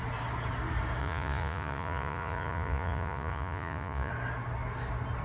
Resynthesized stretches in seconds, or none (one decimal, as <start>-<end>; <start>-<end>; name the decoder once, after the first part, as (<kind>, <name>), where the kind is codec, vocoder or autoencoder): 1.0-4.1 (vocoder, Vocos)